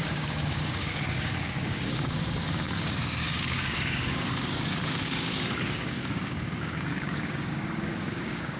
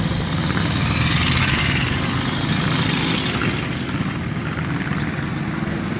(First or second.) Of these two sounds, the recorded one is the second